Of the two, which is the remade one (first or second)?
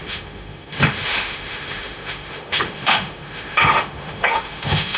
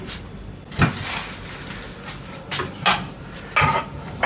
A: first